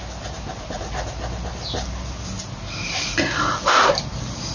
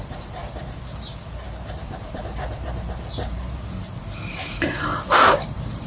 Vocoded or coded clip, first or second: second